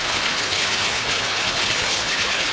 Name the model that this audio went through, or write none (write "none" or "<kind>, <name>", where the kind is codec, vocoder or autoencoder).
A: codec, HILCodec